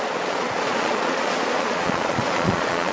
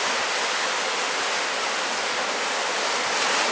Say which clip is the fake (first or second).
first